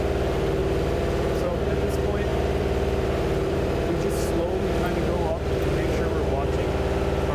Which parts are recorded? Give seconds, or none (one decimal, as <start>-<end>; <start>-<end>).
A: 0.0-0.6; 1.5-2.3; 6.7-7.3